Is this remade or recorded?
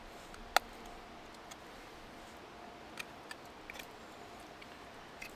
recorded